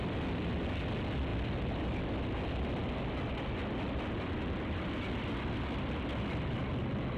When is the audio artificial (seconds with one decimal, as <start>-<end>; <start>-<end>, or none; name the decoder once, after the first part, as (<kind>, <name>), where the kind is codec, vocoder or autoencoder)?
none

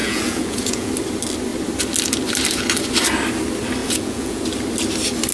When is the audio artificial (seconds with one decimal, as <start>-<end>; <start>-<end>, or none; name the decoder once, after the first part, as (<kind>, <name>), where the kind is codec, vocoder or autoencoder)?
0.0-0.9 (vocoder, Vocos); 3.8-4.4

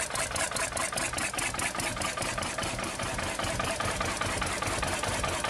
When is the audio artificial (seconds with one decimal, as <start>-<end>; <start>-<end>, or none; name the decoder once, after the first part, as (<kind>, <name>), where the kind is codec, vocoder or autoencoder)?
1.9-3.0 (vocoder, BigVGAN v2)

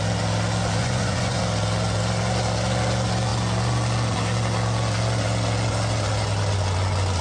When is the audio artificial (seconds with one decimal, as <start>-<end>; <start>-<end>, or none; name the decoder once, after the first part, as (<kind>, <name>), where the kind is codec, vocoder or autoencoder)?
0.8-1.4 (vocoder, Vocos)

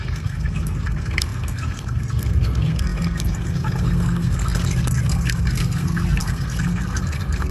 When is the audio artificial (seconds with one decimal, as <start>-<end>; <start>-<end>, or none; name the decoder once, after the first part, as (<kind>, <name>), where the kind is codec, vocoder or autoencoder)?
0.0-7.5 (codec, SNAC)

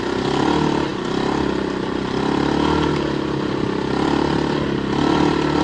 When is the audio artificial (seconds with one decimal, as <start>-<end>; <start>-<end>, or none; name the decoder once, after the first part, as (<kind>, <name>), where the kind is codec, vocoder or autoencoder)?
none

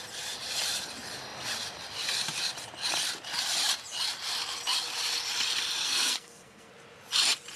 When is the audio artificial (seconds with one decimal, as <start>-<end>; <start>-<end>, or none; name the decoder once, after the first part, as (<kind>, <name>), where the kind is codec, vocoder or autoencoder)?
5.8-6.7 (codec, SNAC)

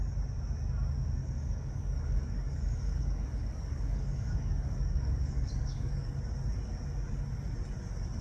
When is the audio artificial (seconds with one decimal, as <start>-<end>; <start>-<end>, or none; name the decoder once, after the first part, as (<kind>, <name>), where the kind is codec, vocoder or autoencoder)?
1.2-6.1 (codec, DAC)